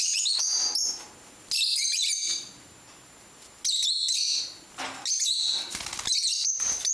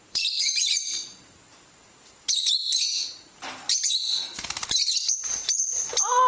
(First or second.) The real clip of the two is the first